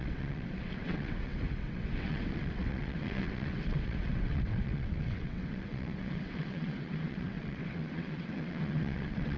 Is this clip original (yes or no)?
no